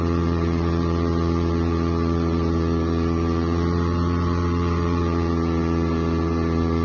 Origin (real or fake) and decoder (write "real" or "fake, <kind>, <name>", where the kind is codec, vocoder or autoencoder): fake, vocoder, Vocos